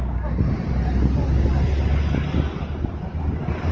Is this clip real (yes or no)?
yes